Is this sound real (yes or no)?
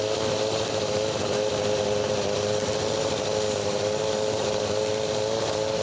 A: yes